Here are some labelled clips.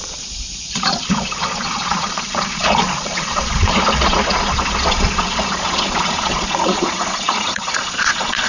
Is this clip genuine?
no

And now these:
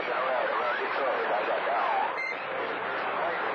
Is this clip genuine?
yes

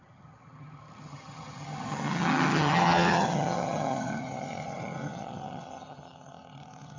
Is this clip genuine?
no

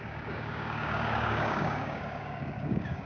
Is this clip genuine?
no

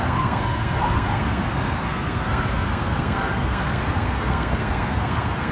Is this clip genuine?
no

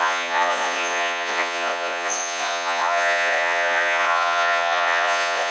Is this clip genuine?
no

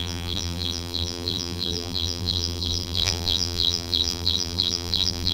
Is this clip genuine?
no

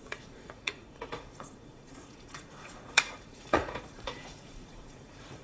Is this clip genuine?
no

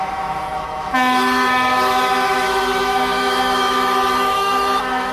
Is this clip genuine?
no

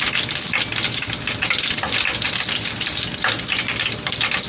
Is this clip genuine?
yes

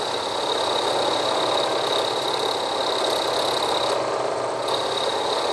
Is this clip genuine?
yes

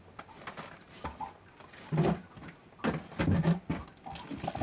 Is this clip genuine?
yes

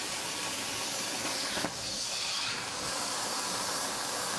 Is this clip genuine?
no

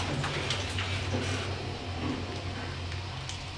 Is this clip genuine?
yes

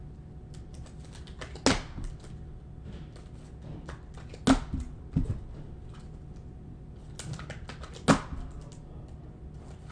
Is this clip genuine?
yes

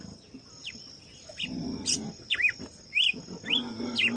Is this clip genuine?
yes